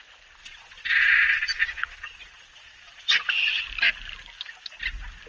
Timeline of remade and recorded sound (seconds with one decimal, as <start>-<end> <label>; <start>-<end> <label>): 0.0-0.4 recorded; 0.4-3.6 remade; 3.6-5.3 recorded